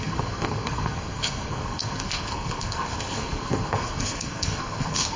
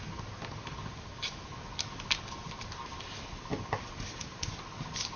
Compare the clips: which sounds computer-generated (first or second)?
first